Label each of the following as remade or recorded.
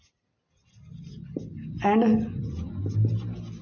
recorded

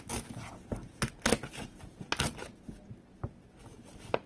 recorded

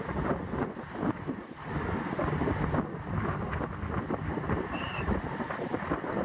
recorded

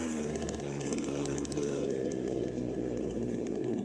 remade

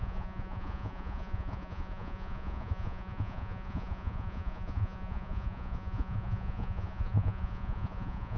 remade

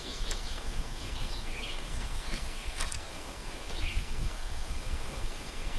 remade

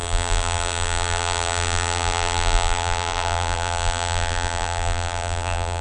remade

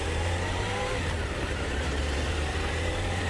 remade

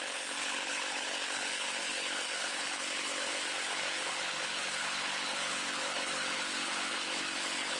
remade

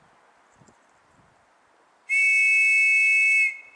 recorded